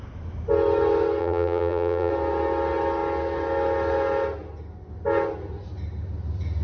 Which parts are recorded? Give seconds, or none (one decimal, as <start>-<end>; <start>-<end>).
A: 0.0-1.2; 2.1-6.6